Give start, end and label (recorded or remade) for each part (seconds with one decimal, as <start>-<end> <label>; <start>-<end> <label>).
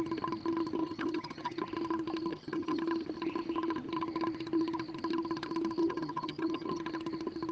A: 0.0-0.8 recorded; 0.8-1.6 remade; 1.6-2.3 recorded; 2.3-2.8 remade; 2.8-5.8 recorded; 5.8-6.8 remade; 6.8-7.5 recorded